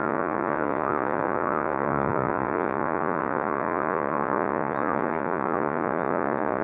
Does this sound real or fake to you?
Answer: fake